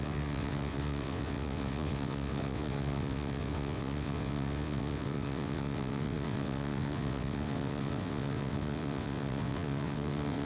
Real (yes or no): no